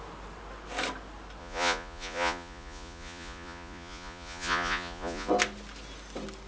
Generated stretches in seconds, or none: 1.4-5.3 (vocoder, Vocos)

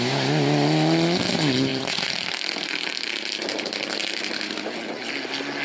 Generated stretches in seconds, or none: 1.7-5.1 (vocoder, BigVGAN v2)